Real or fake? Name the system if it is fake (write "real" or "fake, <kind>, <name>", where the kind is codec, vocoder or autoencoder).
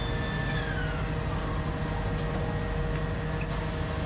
real